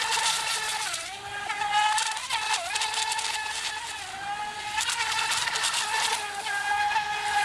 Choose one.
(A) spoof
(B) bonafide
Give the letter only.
B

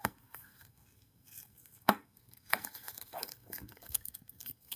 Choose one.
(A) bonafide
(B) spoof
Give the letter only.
B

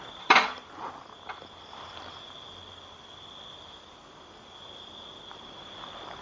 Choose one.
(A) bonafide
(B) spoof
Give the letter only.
A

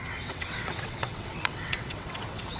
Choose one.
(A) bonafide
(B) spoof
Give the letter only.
B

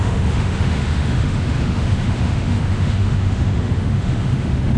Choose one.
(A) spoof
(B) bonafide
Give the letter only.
A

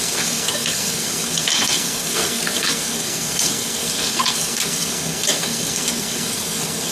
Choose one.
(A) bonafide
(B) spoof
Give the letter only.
B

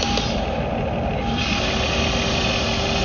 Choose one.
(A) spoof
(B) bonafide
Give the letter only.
B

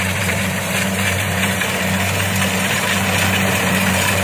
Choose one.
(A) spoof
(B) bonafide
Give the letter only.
A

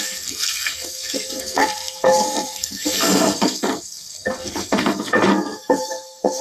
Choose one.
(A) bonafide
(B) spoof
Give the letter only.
B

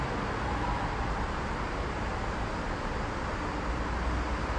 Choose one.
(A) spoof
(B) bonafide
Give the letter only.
B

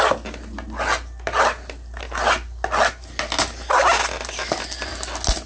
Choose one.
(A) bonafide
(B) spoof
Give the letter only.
A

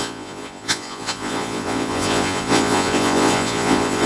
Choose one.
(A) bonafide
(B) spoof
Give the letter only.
B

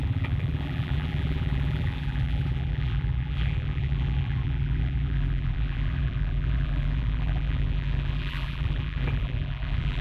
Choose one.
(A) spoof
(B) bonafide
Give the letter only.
A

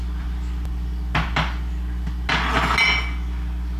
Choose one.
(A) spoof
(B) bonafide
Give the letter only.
B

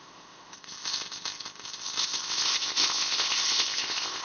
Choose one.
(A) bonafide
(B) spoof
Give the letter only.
B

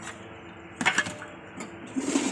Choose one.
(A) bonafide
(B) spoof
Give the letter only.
A